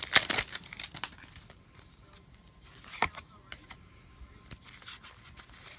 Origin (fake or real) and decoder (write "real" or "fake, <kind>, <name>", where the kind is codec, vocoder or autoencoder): real